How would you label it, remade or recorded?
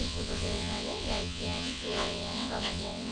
remade